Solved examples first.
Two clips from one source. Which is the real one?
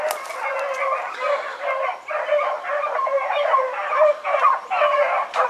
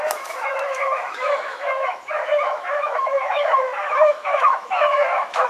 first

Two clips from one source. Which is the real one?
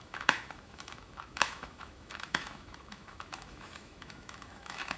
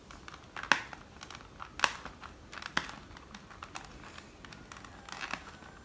second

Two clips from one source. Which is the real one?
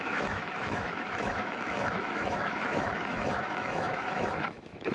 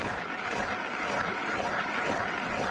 second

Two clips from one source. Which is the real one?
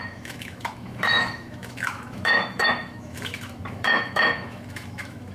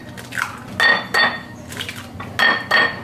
second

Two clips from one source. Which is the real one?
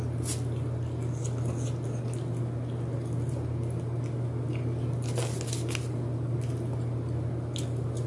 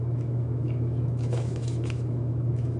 first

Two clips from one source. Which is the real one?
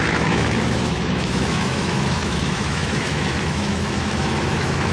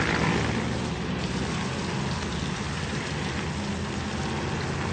second